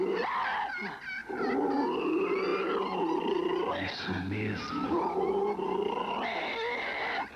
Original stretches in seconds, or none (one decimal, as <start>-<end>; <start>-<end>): 0.0-1.2; 1.8-7.4

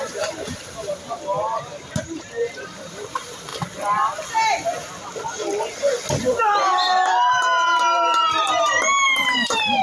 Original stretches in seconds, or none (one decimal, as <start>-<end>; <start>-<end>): 3.5-6.2

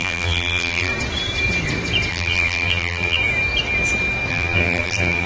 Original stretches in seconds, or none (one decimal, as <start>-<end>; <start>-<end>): 0.9-2.1; 3.2-4.3

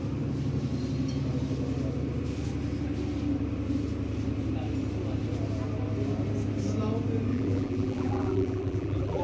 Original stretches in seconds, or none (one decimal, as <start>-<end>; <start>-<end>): 0.0-7.3

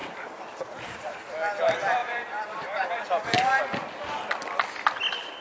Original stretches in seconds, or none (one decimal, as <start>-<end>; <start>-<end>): 1.3-2.0; 3.6-5.4